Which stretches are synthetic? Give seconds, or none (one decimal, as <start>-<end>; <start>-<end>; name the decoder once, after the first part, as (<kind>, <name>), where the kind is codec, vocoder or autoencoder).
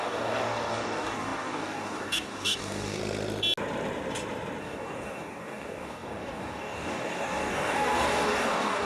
0.0-3.0 (codec, DAC); 4.6-8.8